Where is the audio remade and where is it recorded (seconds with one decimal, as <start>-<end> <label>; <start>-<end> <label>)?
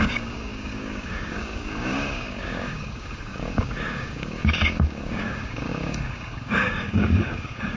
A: 0.0-7.8 remade